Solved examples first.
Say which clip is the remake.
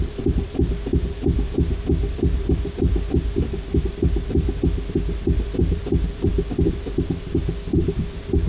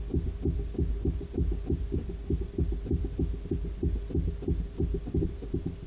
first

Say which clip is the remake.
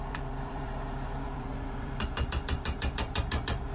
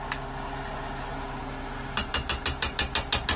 first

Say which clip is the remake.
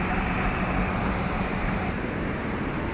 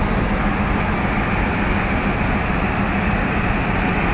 first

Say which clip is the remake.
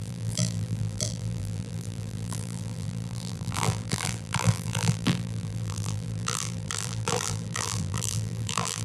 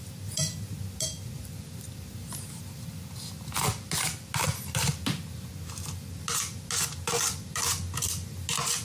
first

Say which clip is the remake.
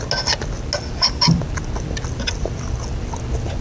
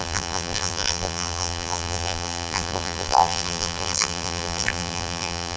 second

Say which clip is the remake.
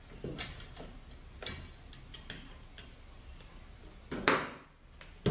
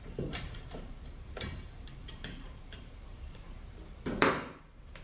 second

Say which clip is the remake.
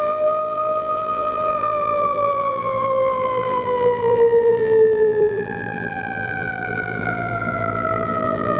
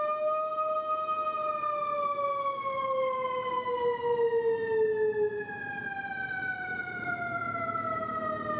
first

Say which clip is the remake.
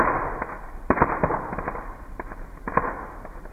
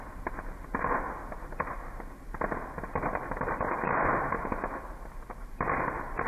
first